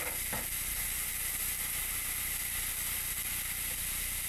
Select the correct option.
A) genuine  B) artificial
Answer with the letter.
A